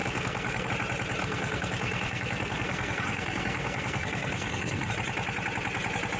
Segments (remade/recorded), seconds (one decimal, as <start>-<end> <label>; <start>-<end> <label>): 0.0-0.7 remade; 0.7-1.2 recorded; 1.2-4.9 remade; 4.9-6.2 recorded